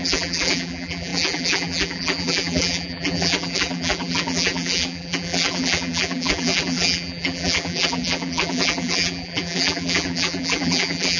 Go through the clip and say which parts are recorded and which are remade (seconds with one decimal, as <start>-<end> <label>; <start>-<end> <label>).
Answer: 0.0-11.2 remade